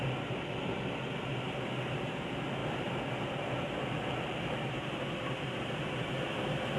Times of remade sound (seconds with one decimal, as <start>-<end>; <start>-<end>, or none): none

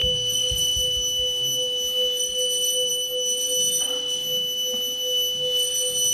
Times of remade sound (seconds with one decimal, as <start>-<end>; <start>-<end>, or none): none